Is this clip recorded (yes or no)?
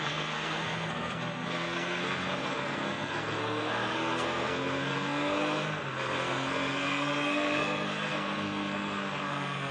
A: no